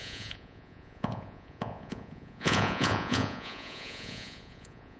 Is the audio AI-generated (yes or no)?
yes